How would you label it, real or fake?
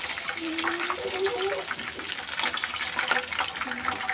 real